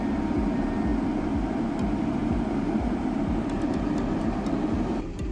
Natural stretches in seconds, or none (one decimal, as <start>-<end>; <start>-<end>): 0.0-2.2